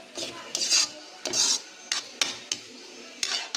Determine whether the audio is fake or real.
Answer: real